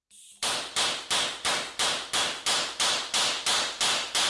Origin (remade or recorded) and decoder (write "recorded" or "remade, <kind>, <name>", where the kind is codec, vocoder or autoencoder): recorded